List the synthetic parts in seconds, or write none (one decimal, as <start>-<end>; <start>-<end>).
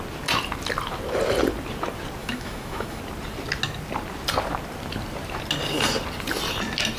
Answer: 2.2-3.0